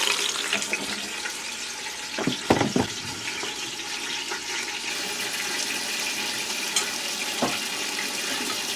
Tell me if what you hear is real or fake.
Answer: real